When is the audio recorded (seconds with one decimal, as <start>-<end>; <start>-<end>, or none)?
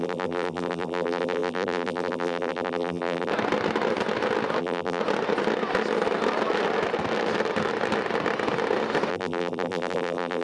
3.3-4.6; 5.0-9.1